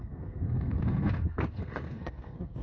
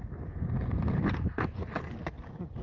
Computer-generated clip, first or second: first